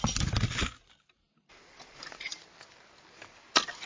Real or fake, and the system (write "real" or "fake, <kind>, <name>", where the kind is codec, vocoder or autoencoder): real